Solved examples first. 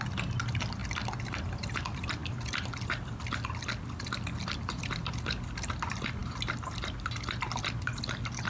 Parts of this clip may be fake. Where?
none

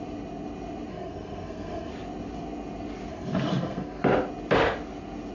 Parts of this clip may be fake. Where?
0.9-1.9 (codec, SNAC); 3.1-4.0

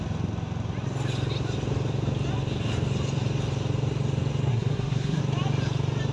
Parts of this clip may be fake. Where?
4.5-5.2 (codec, SNAC)

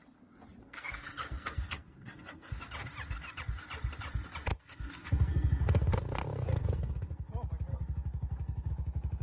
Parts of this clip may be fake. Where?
0.6-2.6 (codec, SNAC); 4.5-7.3; 7.7-8.7

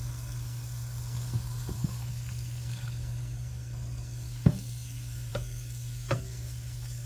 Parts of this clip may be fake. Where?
0.0-7.1 (codec, SNAC)

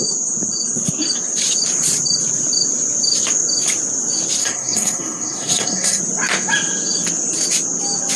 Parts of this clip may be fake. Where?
4.4-6.0 (codec, SNAC)